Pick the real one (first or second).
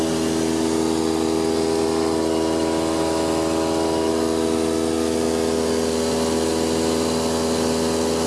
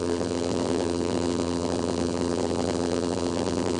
first